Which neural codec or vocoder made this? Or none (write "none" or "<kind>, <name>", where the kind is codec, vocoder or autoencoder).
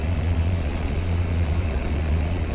vocoder, Vocos